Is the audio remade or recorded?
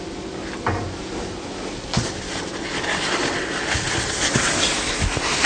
recorded